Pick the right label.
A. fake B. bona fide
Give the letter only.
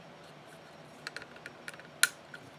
B